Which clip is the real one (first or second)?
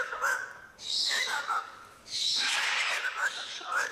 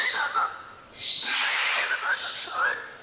second